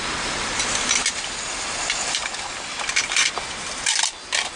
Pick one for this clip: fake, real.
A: real